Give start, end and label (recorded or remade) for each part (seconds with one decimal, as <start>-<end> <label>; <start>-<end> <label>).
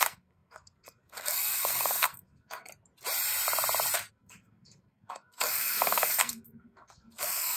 0.0-2.7 remade; 2.7-4.1 recorded; 4.1-7.6 remade